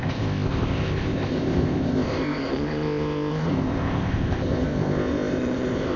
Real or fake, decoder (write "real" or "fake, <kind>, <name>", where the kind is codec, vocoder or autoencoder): fake, codec, ZipCodec